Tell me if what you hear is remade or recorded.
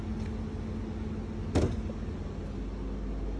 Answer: recorded